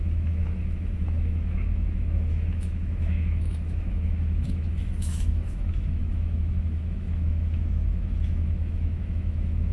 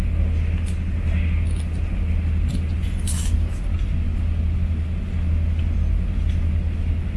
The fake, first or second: first